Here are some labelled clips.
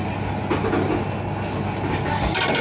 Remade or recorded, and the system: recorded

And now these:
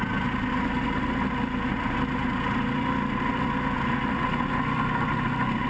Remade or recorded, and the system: recorded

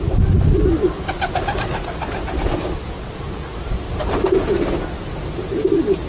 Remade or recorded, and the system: recorded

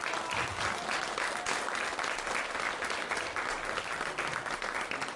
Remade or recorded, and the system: recorded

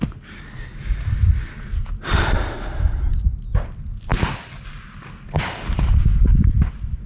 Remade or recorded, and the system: recorded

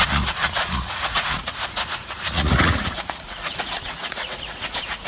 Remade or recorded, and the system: remade, vocoder, Vocos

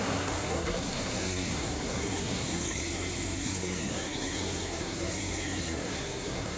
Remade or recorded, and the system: remade, codec, SNAC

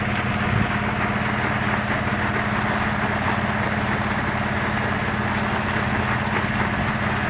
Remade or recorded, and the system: recorded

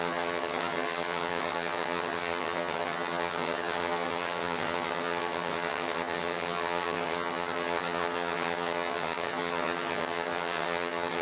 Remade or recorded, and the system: remade, vocoder, HiFi-GAN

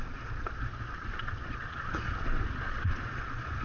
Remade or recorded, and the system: remade, vocoder, Vocos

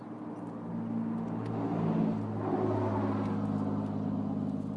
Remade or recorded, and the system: recorded